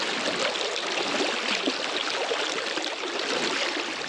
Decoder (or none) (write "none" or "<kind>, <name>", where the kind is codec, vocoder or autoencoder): none